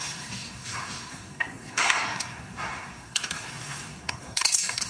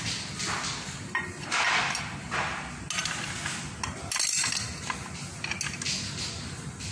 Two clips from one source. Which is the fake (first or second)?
first